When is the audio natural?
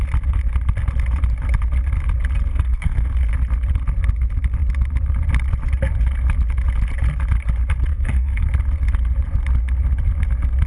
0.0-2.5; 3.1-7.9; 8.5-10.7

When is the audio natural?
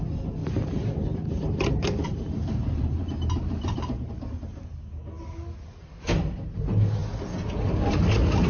0.0-0.4; 4.1-8.5